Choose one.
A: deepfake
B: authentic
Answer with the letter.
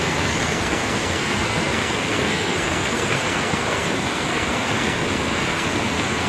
A